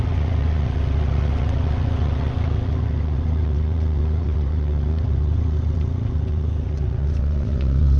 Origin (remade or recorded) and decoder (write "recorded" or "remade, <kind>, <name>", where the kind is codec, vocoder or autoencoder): remade, vocoder, WaveNeXt